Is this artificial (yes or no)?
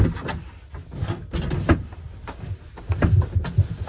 no